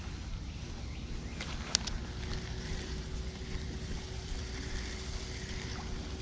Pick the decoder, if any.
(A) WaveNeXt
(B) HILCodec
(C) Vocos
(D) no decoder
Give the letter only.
D